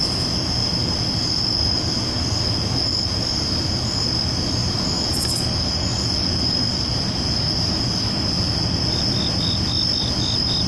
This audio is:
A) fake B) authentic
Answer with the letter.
B